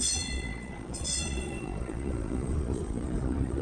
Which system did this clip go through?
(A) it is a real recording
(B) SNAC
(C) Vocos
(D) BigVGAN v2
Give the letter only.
C